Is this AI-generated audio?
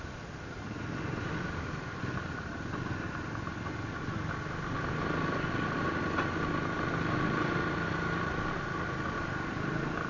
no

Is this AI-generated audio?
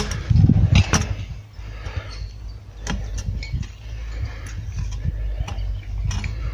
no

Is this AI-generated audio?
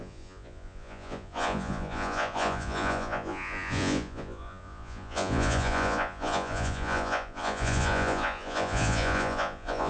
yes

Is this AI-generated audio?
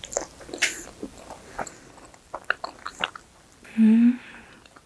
no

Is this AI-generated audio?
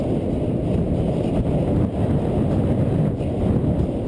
no